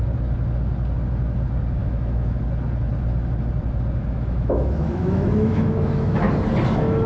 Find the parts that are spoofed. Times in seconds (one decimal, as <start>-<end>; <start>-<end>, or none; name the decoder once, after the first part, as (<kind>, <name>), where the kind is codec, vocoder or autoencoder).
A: 1.8-2.4 (autoencoder, DAC-VAE); 4.0-6.3